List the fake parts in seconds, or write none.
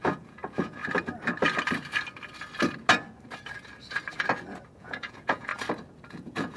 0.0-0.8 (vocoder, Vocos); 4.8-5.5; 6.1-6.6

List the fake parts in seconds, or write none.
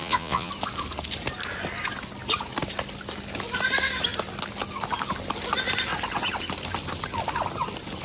0.0-0.5 (vocoder, Vocos)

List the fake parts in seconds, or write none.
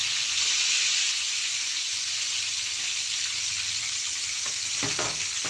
0.0-2.4 (vocoder, Vocos)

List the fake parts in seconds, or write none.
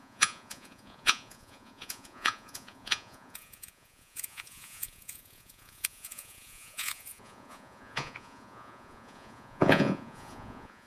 0.0-10.9 (vocoder, Vocos)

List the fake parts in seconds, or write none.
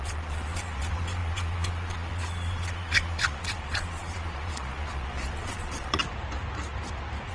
0.0-6.0 (vocoder, Vocos)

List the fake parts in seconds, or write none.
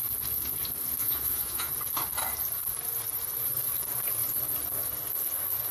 1.0-1.7 (vocoder, Vocos)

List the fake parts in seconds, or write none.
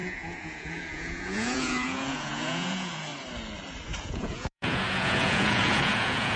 0.0-3.1 (vocoder, Vocos); 4.0-6.4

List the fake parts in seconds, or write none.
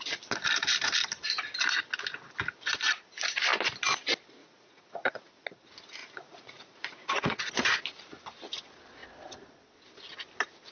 4.4-5.3 (vocoder, Vocos); 6.0-7.5